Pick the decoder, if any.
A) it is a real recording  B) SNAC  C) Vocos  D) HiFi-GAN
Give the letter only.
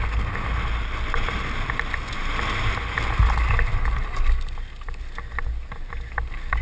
A